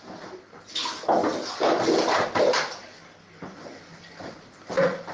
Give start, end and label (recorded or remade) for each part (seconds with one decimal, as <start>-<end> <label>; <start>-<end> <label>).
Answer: 0.0-5.1 recorded